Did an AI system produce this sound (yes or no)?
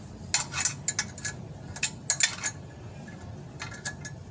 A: no